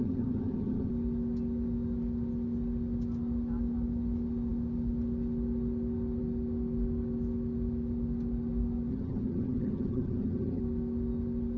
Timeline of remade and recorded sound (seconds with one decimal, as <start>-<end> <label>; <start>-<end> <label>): 0.0-0.9 remade; 0.9-8.9 recorded; 8.9-10.6 remade; 10.6-11.6 recorded